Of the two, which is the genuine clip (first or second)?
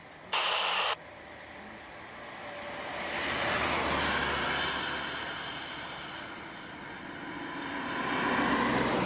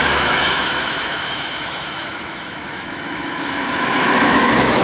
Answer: first